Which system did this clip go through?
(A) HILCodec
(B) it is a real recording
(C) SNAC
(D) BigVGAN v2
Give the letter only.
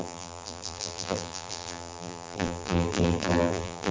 D